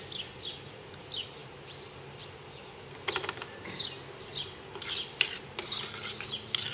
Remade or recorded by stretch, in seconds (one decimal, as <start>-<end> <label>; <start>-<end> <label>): 0.0-6.7 recorded